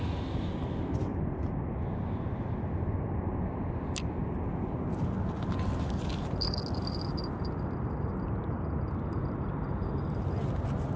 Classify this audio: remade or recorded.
recorded